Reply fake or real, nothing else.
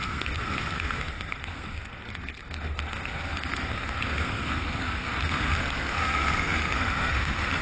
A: fake